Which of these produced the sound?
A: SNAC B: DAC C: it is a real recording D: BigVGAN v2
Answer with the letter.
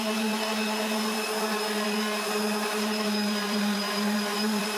D